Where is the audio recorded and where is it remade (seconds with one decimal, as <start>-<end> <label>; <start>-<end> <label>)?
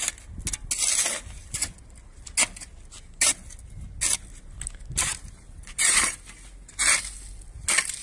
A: 0.0-5.1 recorded; 5.1-6.1 remade; 6.1-8.0 recorded